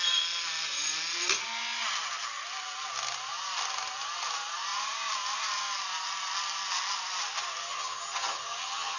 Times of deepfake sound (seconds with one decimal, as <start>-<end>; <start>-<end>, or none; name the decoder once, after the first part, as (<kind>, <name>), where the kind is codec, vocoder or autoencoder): 7.6-9.0 (vocoder, HiFi-GAN)